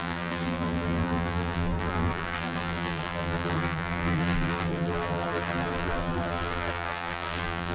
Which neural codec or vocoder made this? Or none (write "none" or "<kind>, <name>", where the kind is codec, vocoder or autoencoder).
vocoder, BigVGAN v2